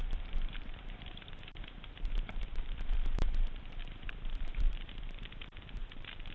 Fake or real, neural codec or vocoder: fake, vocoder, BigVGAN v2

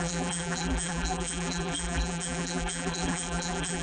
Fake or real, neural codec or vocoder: fake, vocoder, BigVGAN v2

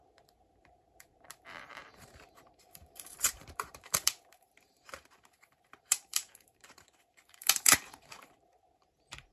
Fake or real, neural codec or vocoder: fake, vocoder, BigVGAN v2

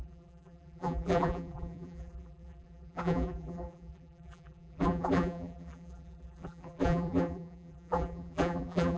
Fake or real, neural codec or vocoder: fake, vocoder, BigVGAN v2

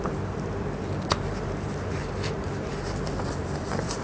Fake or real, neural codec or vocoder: fake, vocoder, BigVGAN v2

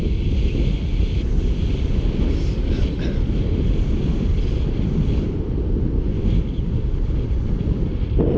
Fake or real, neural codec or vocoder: real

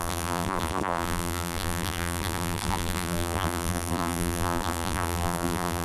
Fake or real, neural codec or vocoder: fake, vocoder, BigVGAN v2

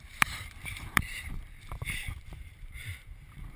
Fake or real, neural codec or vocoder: fake, vocoder, BigVGAN v2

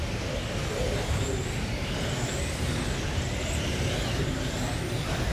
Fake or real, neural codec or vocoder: real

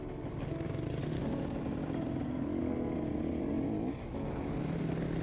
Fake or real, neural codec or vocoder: real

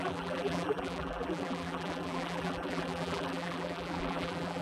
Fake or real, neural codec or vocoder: fake, vocoder, BigVGAN v2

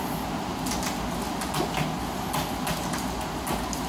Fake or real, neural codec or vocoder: real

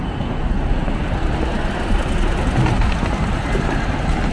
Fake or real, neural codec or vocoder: real